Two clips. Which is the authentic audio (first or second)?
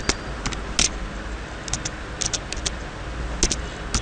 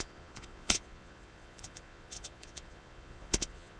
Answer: first